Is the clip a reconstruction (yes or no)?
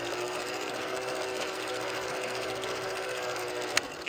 yes